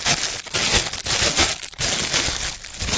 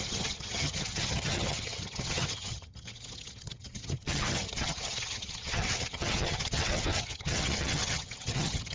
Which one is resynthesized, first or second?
second